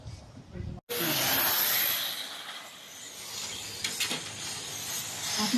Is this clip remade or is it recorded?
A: recorded